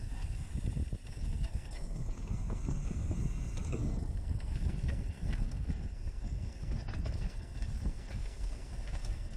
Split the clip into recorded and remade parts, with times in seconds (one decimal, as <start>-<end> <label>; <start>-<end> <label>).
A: 0.0-0.5 remade; 0.5-1.1 recorded; 1.1-9.4 remade

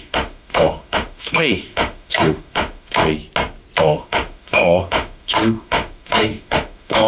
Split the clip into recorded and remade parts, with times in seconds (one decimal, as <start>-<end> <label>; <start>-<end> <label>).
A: 0.0-3.0 remade; 3.0-3.8 recorded; 3.8-7.1 remade

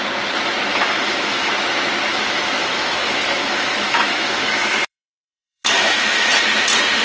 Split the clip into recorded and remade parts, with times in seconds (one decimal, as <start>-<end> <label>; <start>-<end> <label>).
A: 0.0-0.7 recorded; 0.7-1.5 remade; 1.5-2.1 recorded; 2.1-6.3 remade; 6.3-7.0 recorded

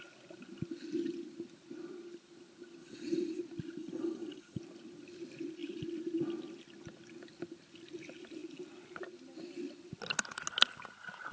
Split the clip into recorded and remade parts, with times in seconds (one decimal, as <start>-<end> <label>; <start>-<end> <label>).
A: 0.0-2.8 recorded; 2.8-3.4 remade; 3.4-3.8 recorded; 3.8-4.6 remade; 4.6-11.3 recorded

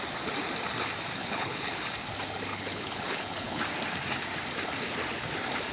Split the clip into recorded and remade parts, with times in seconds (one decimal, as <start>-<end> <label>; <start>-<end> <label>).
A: 0.0-1.2 recorded; 1.2-1.7 remade; 1.7-2.5 recorded; 2.5-3.6 remade; 3.6-5.7 recorded

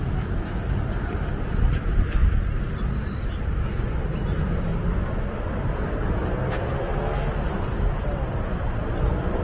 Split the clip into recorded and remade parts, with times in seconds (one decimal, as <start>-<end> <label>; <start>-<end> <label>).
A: 0.0-4.7 remade; 4.7-5.5 recorded; 5.5-6.9 remade; 6.9-8.0 recorded; 8.0-9.4 remade

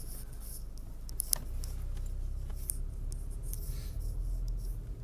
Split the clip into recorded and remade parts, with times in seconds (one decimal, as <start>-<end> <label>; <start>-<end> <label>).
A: 0.0-5.0 recorded

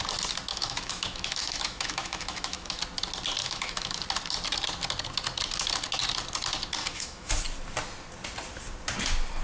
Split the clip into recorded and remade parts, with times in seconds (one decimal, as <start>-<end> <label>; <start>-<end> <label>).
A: 0.0-0.5 recorded; 0.5-2.8 remade; 2.8-3.4 recorded; 3.4-4.0 remade; 4.0-6.8 recorded; 6.8-7.3 remade; 7.3-9.4 recorded